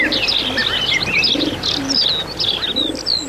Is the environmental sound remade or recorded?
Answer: recorded